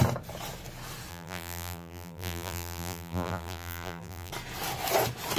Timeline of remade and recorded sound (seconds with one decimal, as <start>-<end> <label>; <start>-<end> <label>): 0.0-1.1 recorded; 1.1-4.3 remade; 4.3-5.4 recorded